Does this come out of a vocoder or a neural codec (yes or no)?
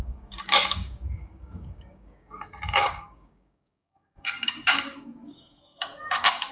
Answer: yes